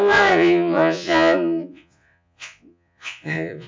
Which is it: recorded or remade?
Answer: remade